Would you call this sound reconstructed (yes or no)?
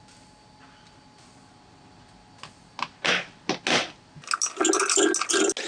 no